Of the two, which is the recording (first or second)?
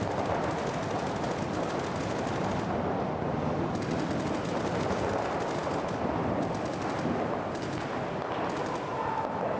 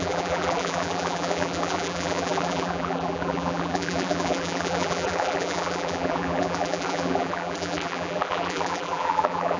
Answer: first